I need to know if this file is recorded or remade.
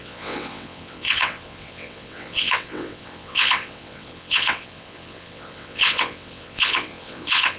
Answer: remade